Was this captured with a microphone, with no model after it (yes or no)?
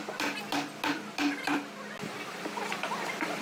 yes